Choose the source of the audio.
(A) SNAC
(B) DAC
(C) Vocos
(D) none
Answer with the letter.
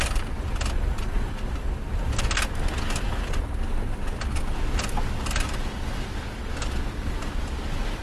D